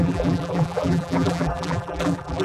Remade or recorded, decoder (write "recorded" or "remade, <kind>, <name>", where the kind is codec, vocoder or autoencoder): remade, vocoder, BigVGAN v2